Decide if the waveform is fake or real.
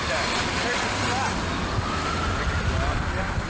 real